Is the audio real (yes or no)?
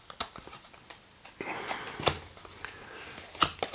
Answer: yes